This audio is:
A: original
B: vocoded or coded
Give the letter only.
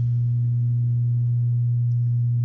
A